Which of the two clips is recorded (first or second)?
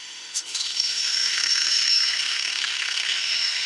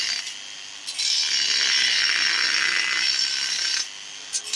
second